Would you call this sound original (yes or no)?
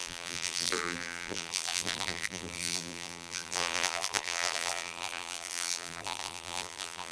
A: no